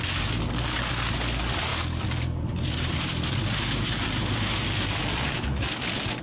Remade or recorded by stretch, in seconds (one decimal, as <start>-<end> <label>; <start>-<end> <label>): 0.0-1.7 recorded; 1.7-5.0 remade; 5.0-6.2 recorded

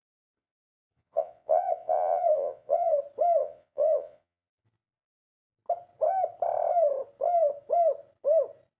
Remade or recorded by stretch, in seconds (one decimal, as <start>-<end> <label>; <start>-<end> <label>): 0.0-3.0 remade; 3.0-3.4 recorded; 3.4-4.6 remade; 4.6-8.8 recorded

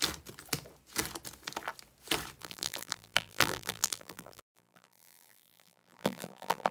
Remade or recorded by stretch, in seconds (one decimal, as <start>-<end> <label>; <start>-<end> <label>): 0.0-2.4 recorded; 2.4-6.7 remade

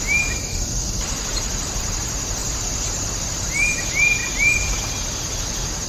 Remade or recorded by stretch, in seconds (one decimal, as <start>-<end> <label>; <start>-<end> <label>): 0.0-0.5 recorded; 0.5-1.0 remade; 1.0-5.9 recorded

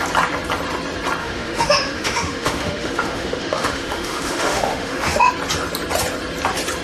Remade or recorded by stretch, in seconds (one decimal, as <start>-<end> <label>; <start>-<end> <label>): 0.0-1.2 recorded; 1.2-5.3 remade; 5.3-6.8 recorded

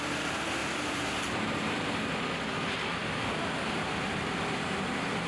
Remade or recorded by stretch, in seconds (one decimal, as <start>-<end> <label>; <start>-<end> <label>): 0.0-0.6 recorded; 0.6-1.8 remade; 1.8-5.3 recorded

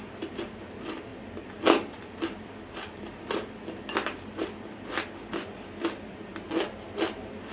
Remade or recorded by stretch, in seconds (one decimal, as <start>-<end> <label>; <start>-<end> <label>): 0.0-7.5 recorded